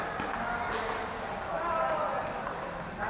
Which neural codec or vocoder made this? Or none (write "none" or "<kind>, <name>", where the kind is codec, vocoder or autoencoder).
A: none